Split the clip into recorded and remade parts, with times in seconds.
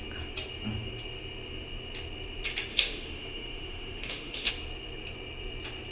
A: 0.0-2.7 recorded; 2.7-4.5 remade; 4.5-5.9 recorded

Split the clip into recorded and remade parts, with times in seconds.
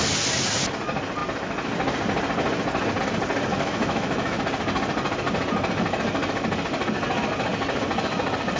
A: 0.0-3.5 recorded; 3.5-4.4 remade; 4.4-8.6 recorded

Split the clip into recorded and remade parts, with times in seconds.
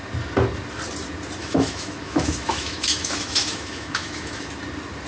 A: 0.0-1.4 recorded; 1.4-4.5 remade; 4.5-5.1 recorded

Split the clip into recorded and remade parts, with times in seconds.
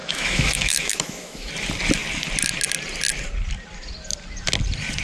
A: 0.0-1.5 remade; 1.5-5.0 recorded